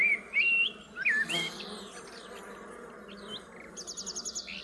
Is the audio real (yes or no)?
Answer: yes